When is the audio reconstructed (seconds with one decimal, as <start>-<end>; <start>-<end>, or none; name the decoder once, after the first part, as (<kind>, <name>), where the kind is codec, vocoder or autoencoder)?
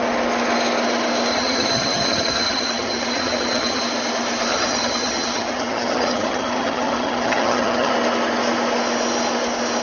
1.3-3.8 (vocoder, HiFi-GAN); 4.5-7.9